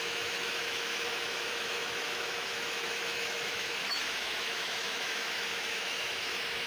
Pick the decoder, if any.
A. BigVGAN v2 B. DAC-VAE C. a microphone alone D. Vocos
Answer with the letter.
B